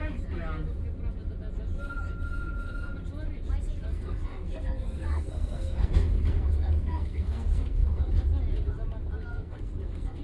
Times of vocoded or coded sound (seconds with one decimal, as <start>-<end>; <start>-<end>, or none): 3.9-8.1; 9.3-10.2